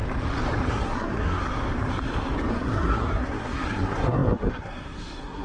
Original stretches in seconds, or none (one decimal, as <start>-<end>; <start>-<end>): 0.0-0.7; 1.4-2.5